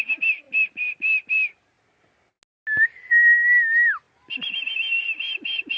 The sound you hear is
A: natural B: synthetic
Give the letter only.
A